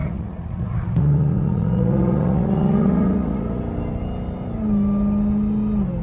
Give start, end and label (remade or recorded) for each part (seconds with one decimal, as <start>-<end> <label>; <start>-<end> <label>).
0.0-3.6 remade; 3.6-6.0 recorded